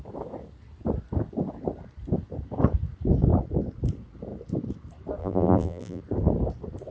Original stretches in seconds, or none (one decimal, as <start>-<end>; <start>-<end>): 0.0-5.2; 6.0-6.9